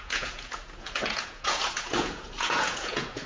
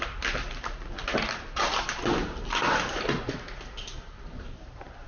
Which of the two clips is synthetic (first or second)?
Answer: first